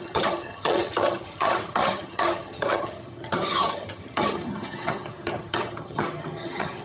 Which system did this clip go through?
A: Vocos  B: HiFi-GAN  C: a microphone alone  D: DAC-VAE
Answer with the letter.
B